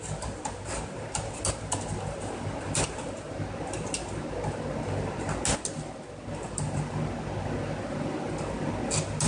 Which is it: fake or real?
real